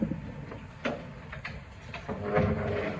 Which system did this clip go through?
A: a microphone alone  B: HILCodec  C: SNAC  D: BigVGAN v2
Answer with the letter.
A